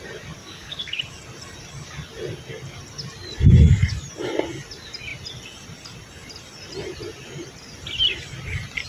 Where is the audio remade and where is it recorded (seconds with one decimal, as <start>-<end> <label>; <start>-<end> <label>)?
0.0-0.4 recorded; 0.4-1.0 remade; 1.0-8.9 recorded